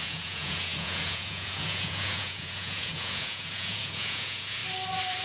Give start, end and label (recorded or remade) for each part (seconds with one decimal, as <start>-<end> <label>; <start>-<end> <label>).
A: 0.0-4.6 remade; 4.6-5.2 recorded